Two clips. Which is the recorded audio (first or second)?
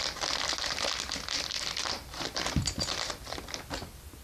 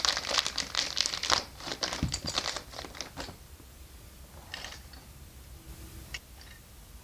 first